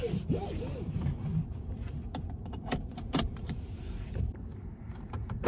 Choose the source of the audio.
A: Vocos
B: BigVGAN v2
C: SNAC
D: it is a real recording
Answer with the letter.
B